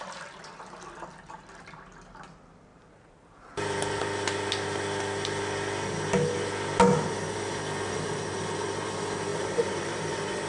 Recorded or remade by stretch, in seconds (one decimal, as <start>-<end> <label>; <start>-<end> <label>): 0.0-2.7 recorded; 2.7-4.0 remade; 4.0-9.3 recorded; 9.3-10.1 remade; 10.1-10.5 recorded

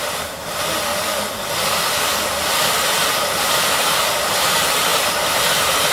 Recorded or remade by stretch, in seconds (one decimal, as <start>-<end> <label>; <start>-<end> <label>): 0.0-0.9 remade; 0.9-3.7 recorded; 3.7-5.9 remade